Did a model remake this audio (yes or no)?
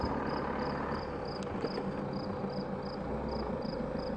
no